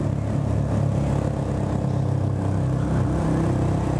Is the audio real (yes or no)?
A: yes